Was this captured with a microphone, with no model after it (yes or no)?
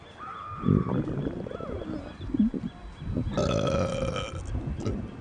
yes